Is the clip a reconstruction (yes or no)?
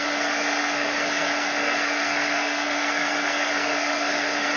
yes